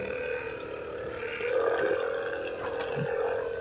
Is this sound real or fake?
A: real